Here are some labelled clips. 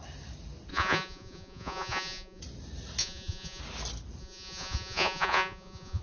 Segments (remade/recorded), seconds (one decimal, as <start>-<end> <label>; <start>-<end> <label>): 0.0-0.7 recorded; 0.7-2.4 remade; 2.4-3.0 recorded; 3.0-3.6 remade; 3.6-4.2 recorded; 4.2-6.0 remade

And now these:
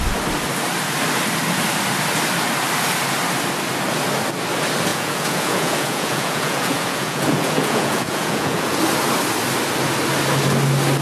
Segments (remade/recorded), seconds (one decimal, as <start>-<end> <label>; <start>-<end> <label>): 0.0-4.9 recorded; 4.9-8.8 remade; 8.8-11.0 recorded

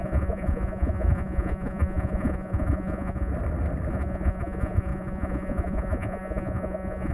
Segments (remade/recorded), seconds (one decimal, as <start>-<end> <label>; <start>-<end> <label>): 0.0-3.3 remade; 3.3-3.9 recorded; 3.9-7.1 remade

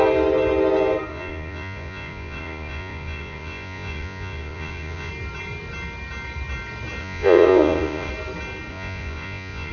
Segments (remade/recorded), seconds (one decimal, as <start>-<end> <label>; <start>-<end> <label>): 0.0-1.1 recorded; 1.1-5.1 remade; 5.1-7.0 recorded; 7.0-8.1 remade; 8.1-8.7 recorded; 8.7-9.7 remade

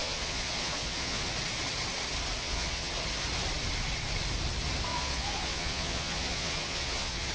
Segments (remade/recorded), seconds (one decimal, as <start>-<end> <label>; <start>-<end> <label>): 0.0-1.3 remade; 1.3-2.4 recorded; 2.4-2.9 remade; 2.9-4.9 recorded; 4.9-7.3 remade

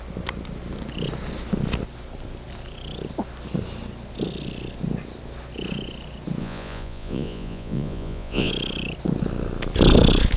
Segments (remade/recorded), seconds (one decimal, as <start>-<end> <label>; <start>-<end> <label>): 0.0-6.4 recorded; 6.4-8.5 remade; 8.5-10.4 recorded